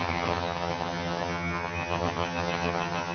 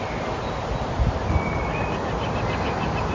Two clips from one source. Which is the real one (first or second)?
second